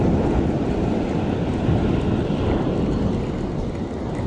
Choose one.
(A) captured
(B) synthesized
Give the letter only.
A